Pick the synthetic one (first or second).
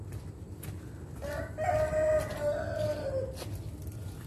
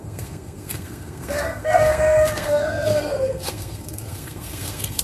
second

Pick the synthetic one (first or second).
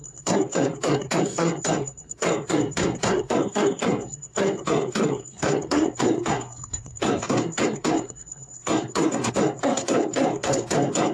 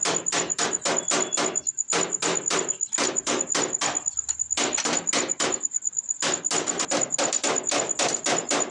first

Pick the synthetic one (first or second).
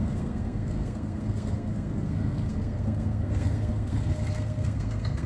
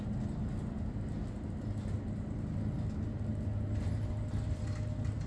first